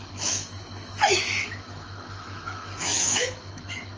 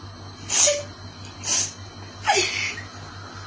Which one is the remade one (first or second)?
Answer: first